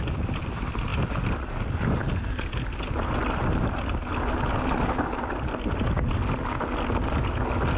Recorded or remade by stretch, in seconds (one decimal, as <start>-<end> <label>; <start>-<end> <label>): 0.0-7.8 recorded